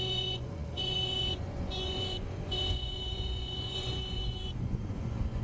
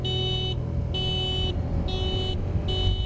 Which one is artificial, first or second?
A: first